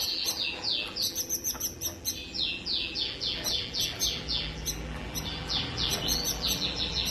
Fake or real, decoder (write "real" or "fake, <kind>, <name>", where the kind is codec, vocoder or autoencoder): fake, vocoder, BigVGAN v2